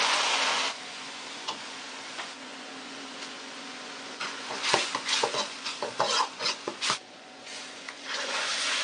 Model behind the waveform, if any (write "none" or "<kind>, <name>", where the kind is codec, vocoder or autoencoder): vocoder, Vocos